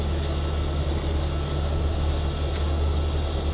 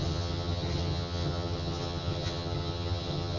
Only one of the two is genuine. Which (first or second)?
first